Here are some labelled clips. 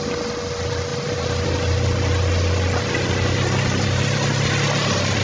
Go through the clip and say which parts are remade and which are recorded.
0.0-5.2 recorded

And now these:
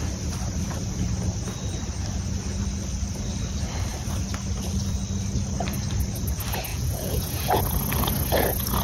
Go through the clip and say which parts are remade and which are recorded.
0.0-6.7 recorded; 6.7-7.6 remade; 7.6-8.8 recorded

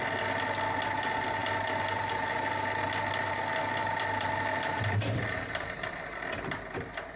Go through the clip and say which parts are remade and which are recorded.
0.0-1.4 recorded; 1.4-2.1 remade; 2.1-3.8 recorded; 3.8-6.2 remade; 6.2-7.2 recorded

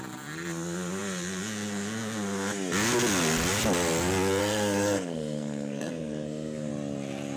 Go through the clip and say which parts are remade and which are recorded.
0.0-4.4 recorded; 4.4-6.7 remade; 6.7-7.4 recorded

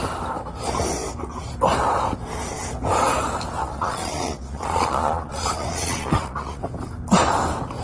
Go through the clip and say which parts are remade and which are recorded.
0.0-3.6 recorded; 3.6-6.6 remade; 6.6-7.8 recorded

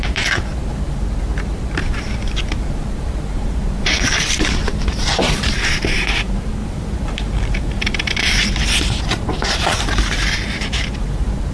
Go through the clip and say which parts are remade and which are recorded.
0.0-11.5 remade